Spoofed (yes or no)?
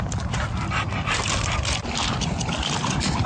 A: yes